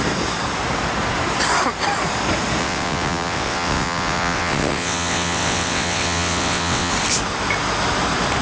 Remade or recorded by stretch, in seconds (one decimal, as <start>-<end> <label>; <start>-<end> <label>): 0.0-2.6 recorded; 2.6-6.9 remade; 6.9-8.4 recorded